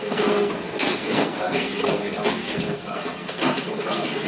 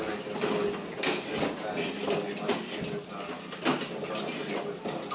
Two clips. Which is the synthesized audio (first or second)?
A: first